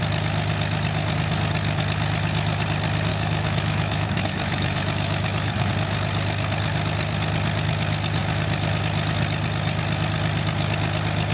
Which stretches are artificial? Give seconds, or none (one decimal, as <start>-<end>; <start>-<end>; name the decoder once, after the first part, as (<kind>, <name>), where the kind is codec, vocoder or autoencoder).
3.1-5.7 (autoencoder, DAC-VAE)